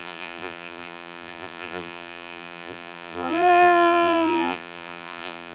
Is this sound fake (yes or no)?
yes